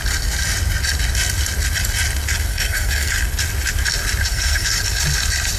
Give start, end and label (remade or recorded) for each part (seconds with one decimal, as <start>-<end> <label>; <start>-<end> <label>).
0.0-2.5 recorded; 2.5-3.1 remade; 3.1-4.3 recorded; 4.3-4.8 remade; 4.8-5.6 recorded